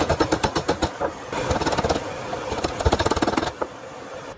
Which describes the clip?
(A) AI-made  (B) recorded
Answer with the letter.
B